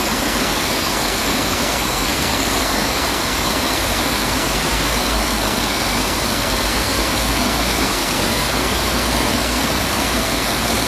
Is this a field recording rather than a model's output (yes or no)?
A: no